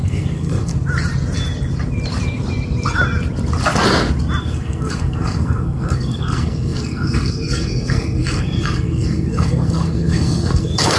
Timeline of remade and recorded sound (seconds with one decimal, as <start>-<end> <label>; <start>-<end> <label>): 0.0-0.7 remade; 0.7-4.4 recorded; 4.4-11.0 remade